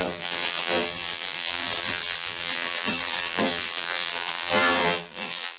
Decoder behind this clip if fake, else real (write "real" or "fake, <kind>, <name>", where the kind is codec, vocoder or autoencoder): fake, vocoder, BigVGAN v2